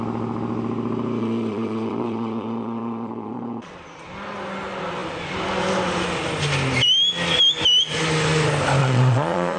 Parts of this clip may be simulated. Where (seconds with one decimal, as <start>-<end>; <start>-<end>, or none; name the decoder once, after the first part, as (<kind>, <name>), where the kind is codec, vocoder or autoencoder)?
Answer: 1.2-3.7 (vocoder, Vocos); 8.8-9.6

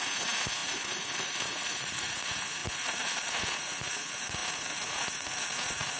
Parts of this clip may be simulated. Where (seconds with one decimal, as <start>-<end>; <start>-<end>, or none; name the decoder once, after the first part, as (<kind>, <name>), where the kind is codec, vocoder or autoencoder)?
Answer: 0.0-6.0 (vocoder, Vocos)

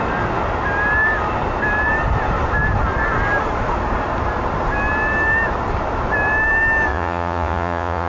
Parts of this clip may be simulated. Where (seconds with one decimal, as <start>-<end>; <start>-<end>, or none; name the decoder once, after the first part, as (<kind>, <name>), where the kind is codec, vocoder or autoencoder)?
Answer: 6.9-8.1 (vocoder, Vocos)

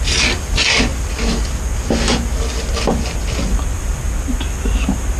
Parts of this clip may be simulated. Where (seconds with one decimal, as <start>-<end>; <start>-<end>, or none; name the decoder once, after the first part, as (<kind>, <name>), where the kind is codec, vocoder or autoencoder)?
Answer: none

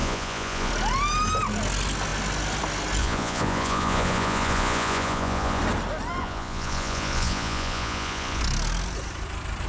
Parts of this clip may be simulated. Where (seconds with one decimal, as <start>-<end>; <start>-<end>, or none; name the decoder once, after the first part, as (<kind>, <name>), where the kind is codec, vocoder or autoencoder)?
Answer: 0.0-0.7 (vocoder, Vocos); 3.0-5.6; 6.2-8.4

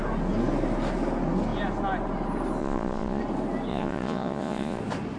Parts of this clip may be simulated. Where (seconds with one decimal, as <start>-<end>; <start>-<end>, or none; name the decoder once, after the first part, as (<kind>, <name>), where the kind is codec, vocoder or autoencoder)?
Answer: 2.6-3.2 (vocoder, Vocos); 3.7-4.8